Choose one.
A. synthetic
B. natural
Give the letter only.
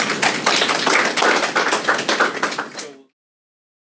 B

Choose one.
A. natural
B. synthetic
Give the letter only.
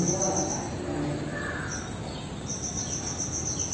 A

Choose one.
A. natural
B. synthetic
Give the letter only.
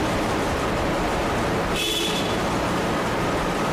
B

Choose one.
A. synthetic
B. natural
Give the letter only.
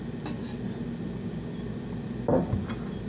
B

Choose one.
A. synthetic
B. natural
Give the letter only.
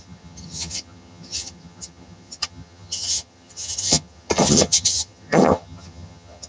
A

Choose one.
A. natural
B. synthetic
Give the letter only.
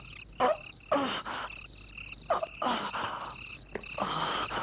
A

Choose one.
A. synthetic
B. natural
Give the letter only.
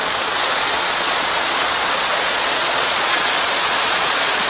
A